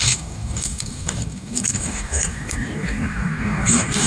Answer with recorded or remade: remade